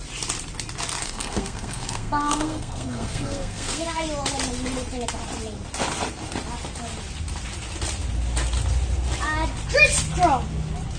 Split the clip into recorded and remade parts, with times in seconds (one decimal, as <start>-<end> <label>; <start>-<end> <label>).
0.0-1.0 recorded; 1.0-4.0 remade; 4.0-11.0 recorded